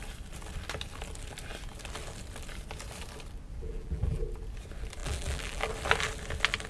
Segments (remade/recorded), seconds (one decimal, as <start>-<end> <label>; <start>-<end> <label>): 0.0-3.6 recorded; 3.6-4.2 remade; 4.2-5.0 recorded; 5.0-5.7 remade; 5.7-6.7 recorded